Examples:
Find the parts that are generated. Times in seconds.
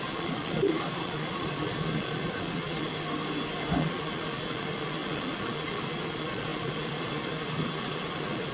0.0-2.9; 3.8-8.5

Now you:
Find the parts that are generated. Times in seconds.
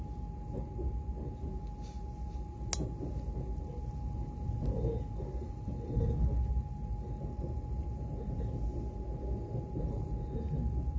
5.4-6.0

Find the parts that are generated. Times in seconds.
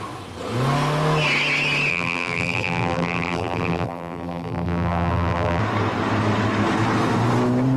1.9-5.6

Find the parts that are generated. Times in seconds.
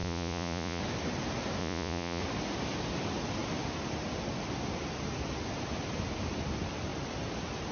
0.0-0.8; 1.6-2.2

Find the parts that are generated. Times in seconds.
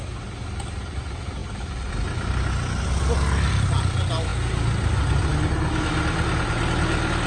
none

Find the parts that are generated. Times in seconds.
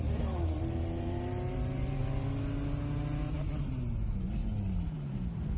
0.0-2.0